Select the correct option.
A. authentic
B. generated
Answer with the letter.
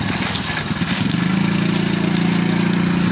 A